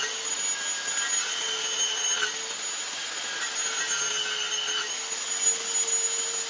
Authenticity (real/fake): real